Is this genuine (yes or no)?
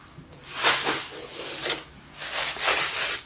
yes